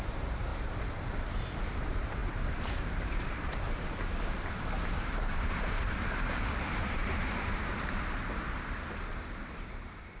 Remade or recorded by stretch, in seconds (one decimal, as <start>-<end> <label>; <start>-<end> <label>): 0.0-0.5 remade; 0.5-1.6 recorded; 1.6-10.2 remade